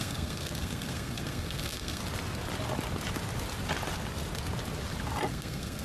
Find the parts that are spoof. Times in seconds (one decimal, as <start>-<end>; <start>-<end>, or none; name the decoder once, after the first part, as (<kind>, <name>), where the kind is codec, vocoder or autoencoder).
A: 0.0-2.0 (codec, SNAC); 5.3-5.8